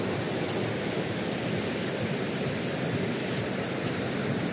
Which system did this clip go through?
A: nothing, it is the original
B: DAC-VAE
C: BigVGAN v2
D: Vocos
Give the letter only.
A